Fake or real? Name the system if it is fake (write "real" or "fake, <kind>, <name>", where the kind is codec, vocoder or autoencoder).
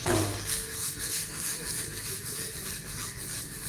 fake, codec, SNAC